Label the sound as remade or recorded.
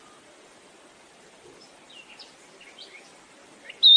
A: recorded